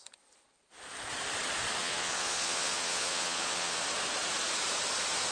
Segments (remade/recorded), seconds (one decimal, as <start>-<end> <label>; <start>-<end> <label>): 0.0-1.8 recorded; 1.8-3.8 remade; 3.8-5.3 recorded